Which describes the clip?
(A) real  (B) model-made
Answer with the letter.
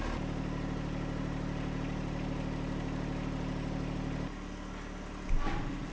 A